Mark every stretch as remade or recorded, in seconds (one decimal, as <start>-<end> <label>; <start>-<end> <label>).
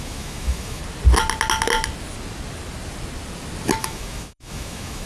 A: 0.0-0.8 remade; 0.8-3.8 recorded; 3.8-5.1 remade